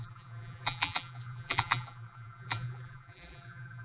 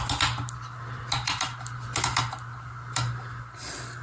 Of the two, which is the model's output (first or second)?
first